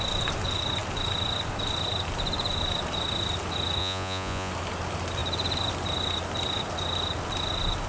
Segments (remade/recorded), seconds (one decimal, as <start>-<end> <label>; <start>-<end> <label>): 0.0-3.8 recorded; 3.8-4.5 remade; 4.5-7.9 recorded